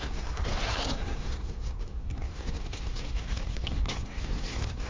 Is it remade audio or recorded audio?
remade